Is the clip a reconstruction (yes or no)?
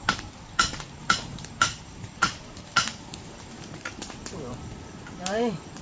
yes